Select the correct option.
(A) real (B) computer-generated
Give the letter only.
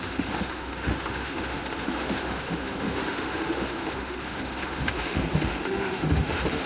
B